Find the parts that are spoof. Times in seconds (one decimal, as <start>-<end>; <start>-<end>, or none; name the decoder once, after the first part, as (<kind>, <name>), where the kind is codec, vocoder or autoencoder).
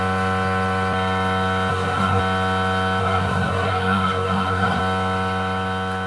1.7-2.2 (codec, SNAC); 3.0-4.8